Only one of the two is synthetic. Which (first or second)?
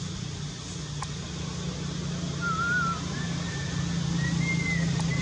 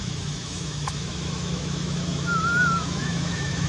second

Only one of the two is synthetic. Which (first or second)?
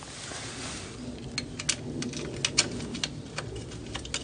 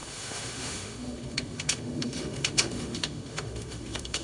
second